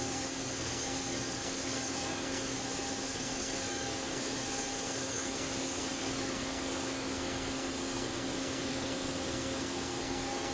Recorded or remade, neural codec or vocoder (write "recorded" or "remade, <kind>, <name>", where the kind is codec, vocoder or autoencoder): remade, codec, SNAC